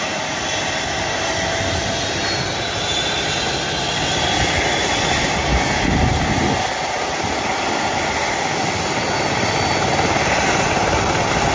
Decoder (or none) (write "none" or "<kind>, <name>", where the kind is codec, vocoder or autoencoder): none